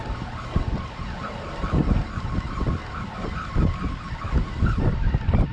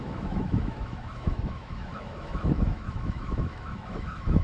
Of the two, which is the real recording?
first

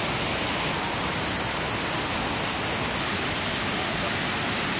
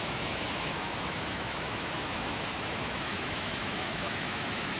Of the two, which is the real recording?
first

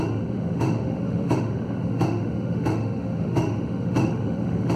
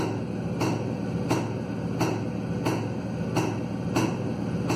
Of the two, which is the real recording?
second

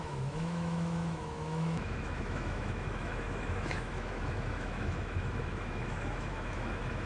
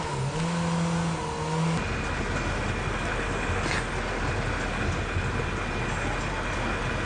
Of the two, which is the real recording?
second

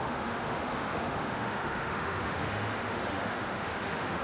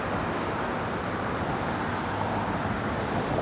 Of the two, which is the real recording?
second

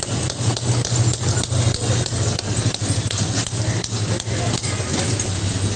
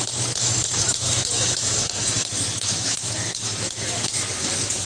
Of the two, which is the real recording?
first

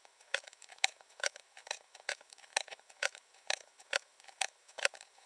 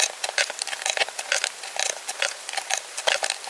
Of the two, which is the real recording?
second